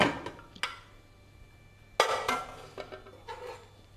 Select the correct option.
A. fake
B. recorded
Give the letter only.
B